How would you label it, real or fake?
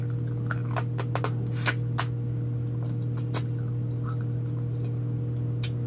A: real